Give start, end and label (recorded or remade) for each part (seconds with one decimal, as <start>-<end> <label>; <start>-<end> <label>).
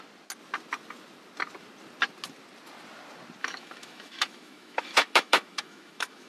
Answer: 0.0-3.4 recorded; 3.4-6.3 remade